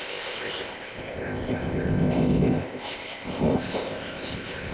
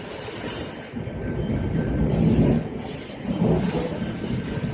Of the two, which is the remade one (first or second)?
first